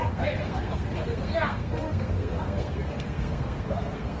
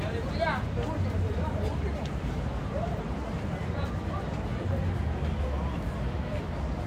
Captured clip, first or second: second